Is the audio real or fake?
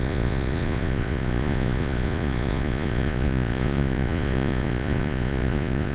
fake